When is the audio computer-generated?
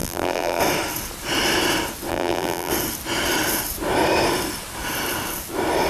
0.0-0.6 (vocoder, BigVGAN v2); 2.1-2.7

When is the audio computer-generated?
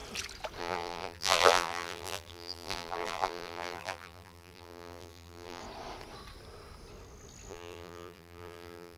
0.6-5.6 (vocoder, BigVGAN v2); 7.5-9.0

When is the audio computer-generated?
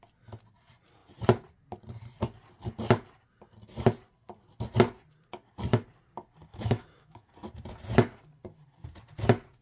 6.5-7.3 (autoencoder, DAC-VAE)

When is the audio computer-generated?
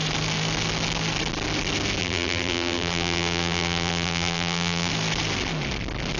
2.0-4.9 (vocoder, BigVGAN v2)